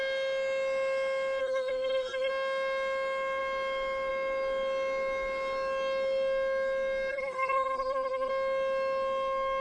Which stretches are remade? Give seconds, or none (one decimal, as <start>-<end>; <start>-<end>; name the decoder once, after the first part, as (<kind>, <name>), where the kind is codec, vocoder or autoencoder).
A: 1.4-2.3 (codec, SNAC); 7.1-8.3